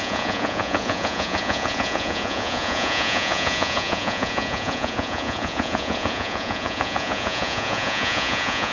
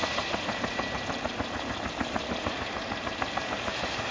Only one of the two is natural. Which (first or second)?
second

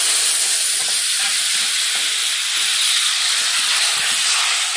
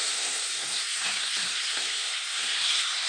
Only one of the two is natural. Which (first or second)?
first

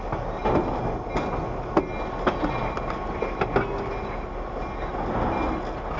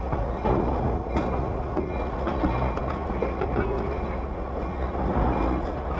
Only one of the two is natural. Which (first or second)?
first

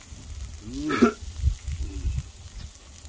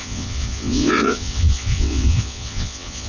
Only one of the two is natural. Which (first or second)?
first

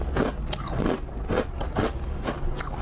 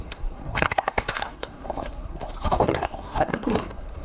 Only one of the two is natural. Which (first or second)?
first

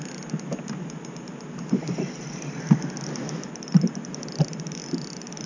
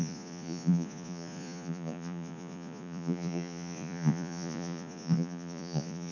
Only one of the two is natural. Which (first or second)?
first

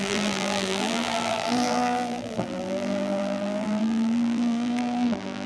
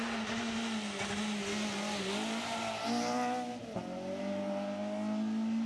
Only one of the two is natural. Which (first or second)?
second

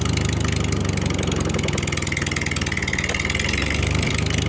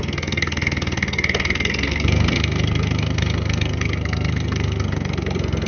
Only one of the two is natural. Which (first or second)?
first